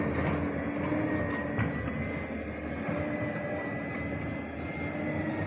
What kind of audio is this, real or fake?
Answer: real